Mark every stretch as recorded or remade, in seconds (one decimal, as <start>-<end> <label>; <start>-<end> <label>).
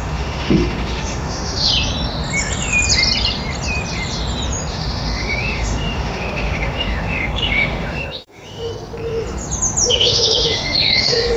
0.0-1.7 remade; 1.7-4.7 recorded; 4.7-8.7 remade; 8.7-9.9 recorded; 9.9-11.4 remade